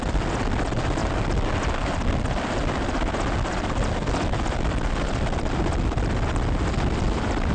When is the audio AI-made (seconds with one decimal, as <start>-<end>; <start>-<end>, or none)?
none